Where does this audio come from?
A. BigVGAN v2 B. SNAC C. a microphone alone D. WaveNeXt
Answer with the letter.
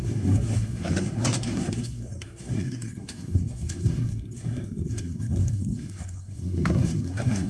B